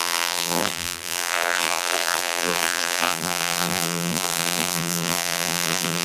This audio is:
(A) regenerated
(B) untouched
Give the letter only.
A